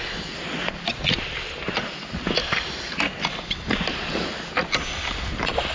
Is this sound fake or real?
real